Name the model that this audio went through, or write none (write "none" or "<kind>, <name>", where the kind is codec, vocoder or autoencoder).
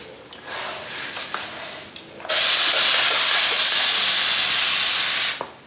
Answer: none